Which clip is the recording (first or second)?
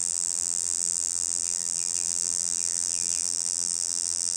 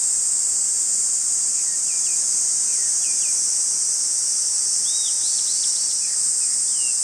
second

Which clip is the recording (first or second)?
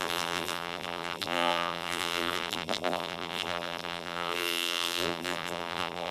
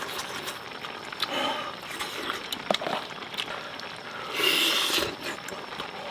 second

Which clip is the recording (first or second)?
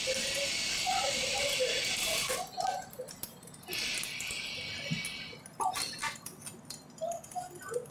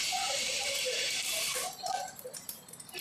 first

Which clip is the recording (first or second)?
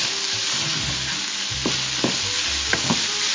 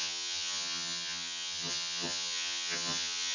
first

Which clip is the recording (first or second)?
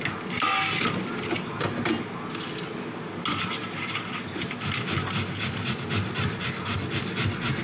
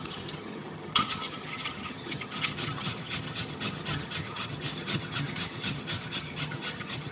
first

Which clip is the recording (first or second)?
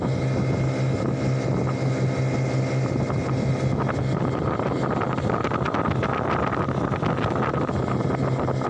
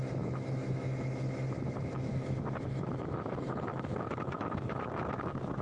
first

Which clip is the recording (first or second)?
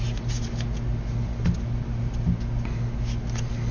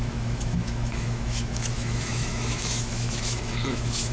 first